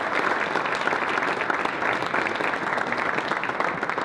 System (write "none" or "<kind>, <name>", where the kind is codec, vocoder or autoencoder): none